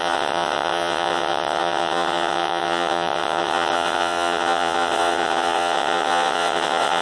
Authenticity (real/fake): fake